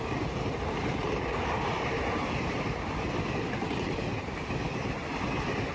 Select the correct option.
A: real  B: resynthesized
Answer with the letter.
A